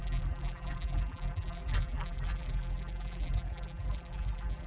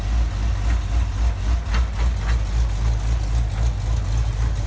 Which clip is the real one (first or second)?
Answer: second